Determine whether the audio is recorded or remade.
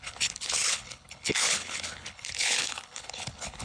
remade